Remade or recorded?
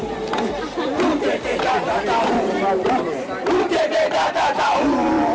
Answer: remade